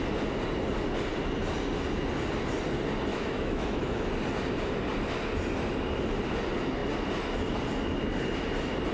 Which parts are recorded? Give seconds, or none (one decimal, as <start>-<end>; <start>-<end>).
0.0-3.1; 4.1-8.9